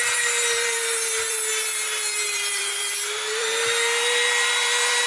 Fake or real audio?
fake